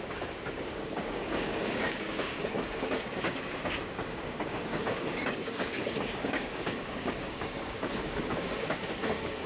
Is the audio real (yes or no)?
no